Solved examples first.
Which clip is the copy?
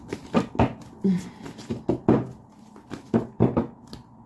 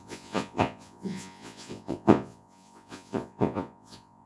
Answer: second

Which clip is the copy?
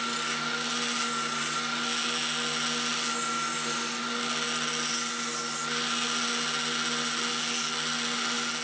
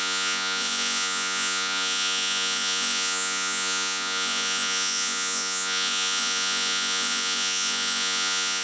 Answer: second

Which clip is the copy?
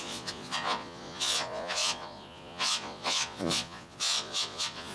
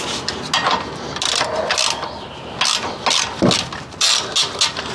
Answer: first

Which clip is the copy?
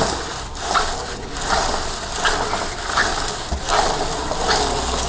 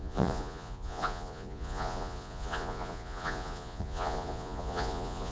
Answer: second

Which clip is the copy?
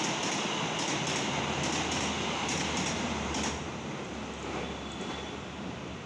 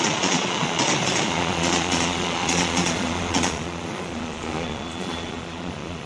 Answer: second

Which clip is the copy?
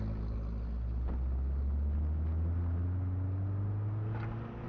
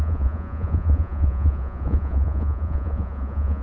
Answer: second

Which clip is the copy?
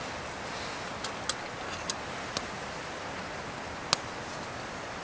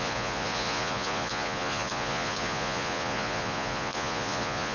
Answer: second